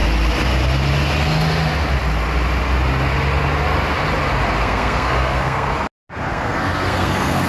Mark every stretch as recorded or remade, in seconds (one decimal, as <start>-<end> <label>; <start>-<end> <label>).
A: 0.0-4.6 recorded; 4.6-5.7 remade; 5.7-6.3 recorded; 6.3-7.5 remade